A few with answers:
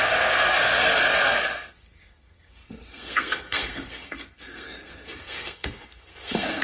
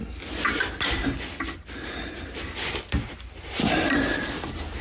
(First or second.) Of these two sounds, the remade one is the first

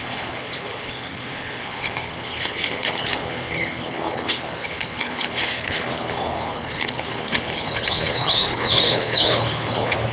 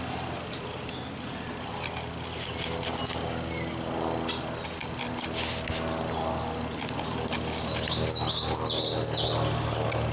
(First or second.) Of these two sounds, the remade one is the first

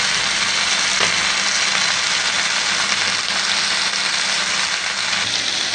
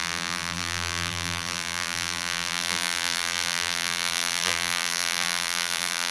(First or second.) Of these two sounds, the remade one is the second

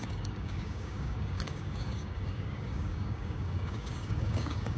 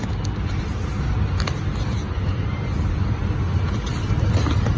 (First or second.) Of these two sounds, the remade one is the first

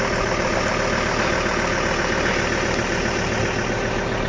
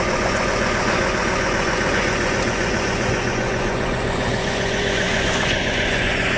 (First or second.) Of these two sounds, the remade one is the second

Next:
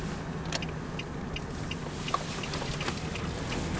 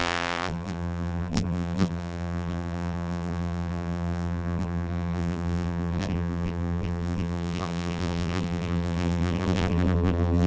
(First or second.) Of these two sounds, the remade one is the second